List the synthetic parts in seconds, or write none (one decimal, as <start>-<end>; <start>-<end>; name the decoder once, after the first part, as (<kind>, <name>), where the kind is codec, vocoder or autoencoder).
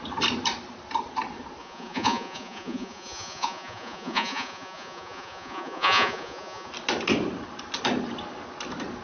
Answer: 1.6-6.7 (vocoder, Vocos)